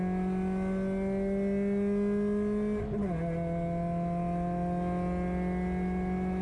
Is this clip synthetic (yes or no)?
no